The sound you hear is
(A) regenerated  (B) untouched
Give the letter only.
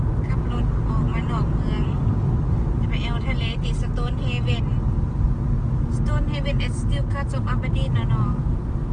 B